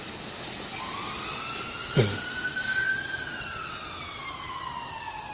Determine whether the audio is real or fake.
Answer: real